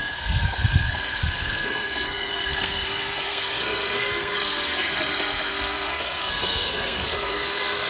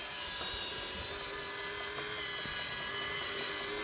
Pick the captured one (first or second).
second